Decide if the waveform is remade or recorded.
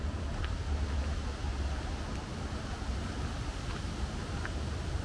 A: recorded